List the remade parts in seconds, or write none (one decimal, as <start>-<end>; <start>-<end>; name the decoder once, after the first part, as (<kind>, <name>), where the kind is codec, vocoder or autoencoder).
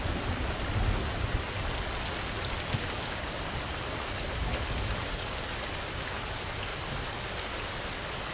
none